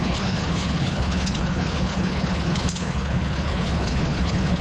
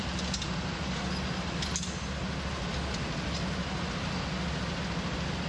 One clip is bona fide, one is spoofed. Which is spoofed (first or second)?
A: first